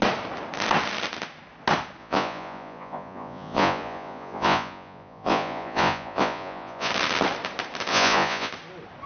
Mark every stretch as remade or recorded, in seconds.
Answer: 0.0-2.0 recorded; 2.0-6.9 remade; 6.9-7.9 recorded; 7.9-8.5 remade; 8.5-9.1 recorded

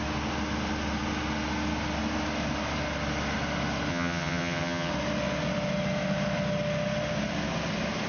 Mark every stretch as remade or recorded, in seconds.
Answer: 0.0-3.9 recorded; 3.9-4.9 remade; 4.9-8.1 recorded

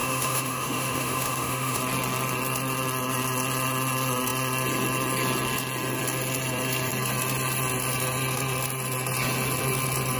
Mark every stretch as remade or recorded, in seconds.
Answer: 0.0-1.8 remade; 1.8-10.2 recorded

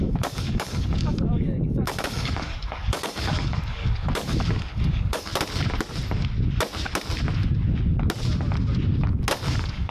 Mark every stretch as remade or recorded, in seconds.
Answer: 0.0-5.3 remade; 5.3-9.5 recorded; 9.5-9.9 remade

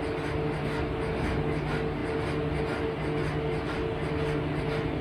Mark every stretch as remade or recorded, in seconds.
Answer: 0.0-5.0 recorded

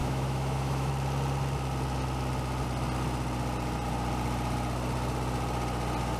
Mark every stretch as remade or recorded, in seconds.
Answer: 0.0-0.9 remade; 0.9-6.2 recorded